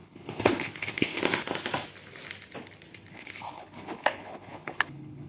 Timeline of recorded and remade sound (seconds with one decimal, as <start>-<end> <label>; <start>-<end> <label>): 0.0-1.2 remade; 1.2-3.1 recorded; 3.1-5.3 remade